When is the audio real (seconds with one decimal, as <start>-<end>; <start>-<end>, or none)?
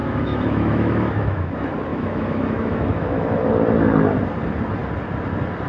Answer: 1.5-1.9; 3.5-5.7